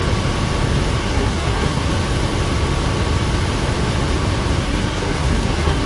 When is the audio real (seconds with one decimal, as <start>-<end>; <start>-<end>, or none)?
0.0-1.0; 1.9-4.6